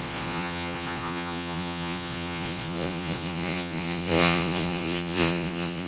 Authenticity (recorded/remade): remade